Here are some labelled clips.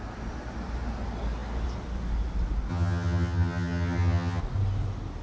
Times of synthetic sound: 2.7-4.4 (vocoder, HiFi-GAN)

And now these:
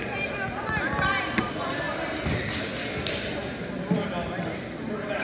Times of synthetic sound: none

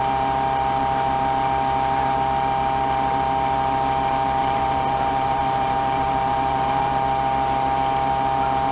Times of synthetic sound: 4.4-6.9 (vocoder, BigVGAN v2)

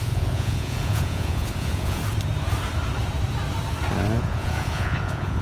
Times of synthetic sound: 0.0-2.0 (vocoder, Vocos); 4.2-5.4

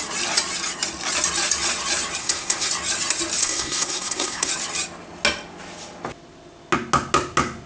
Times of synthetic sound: 2.2-2.7 (codec, SNAC); 3.4-4.5